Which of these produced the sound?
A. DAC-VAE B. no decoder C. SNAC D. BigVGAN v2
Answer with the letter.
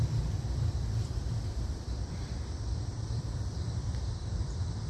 D